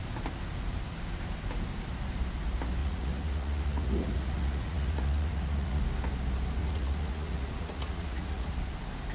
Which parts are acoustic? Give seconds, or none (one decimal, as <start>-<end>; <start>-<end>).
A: 0.0-2.8; 5.8-6.6; 8.5-9.1